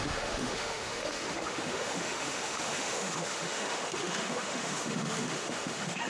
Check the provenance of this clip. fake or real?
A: fake